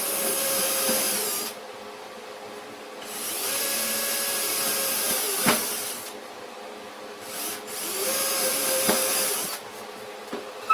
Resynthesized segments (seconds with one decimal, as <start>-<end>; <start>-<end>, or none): 0.0-10.7